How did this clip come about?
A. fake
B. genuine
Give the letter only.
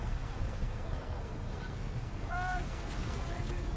A